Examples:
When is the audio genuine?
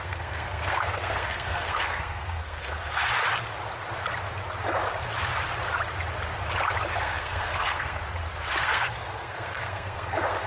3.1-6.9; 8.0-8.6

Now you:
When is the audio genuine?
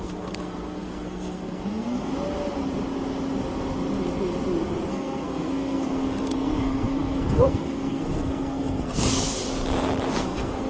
2.1-4.9; 9.4-10.1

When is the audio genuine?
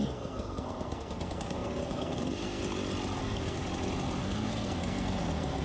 2.6-3.2; 3.6-4.2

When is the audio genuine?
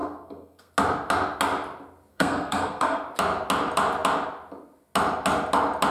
0.7-2.1; 3.0-5.9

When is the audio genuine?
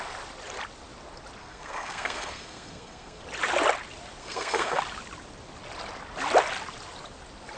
0.0-1.4; 3.2-4.2; 4.8-7.6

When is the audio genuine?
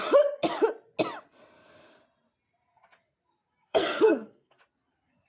0.0-3.6; 4.6-5.3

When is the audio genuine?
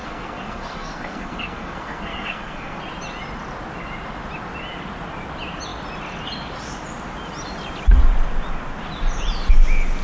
2.8-10.0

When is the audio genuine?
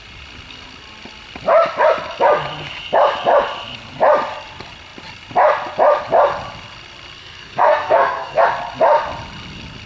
0.0-7.2; 8.4-9.9